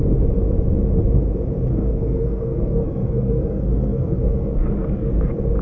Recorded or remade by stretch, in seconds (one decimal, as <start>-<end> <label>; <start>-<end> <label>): 0.0-1.7 recorded; 1.7-5.1 remade; 5.1-5.6 recorded